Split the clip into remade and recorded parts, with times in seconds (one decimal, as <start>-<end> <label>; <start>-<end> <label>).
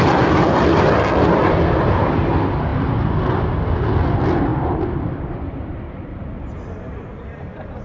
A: 0.0-4.5 recorded; 4.5-6.2 remade; 6.2-7.8 recorded